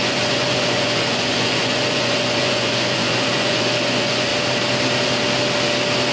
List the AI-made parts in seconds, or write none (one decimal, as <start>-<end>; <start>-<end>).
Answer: 0.0-4.3